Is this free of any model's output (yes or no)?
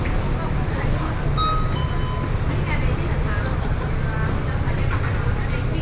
yes